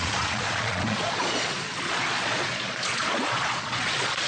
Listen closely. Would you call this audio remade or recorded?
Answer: remade